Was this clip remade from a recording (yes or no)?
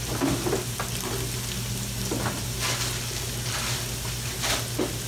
no